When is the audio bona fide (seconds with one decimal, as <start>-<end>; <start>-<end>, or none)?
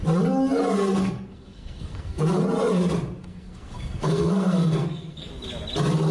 0.0-1.0; 2.4-3.2; 5.3-6.1